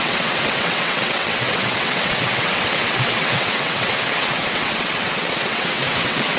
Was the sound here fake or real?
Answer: fake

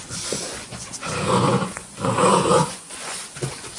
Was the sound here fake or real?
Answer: fake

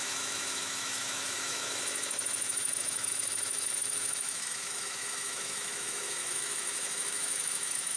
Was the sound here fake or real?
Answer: fake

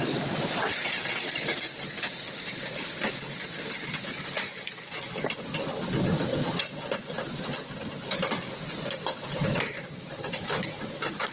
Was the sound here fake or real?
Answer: real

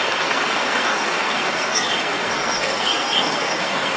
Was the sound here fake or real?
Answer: fake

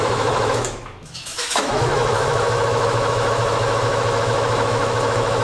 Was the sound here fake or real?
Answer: fake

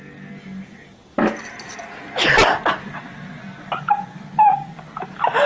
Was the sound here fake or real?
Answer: real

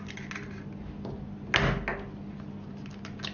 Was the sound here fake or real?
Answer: real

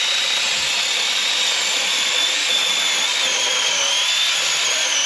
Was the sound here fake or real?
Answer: real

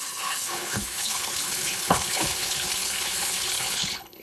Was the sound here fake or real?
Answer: fake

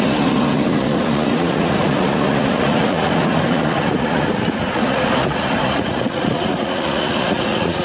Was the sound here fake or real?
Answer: fake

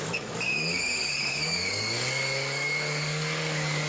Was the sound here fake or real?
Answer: fake